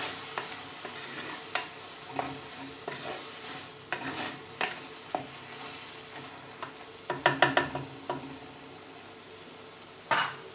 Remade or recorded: recorded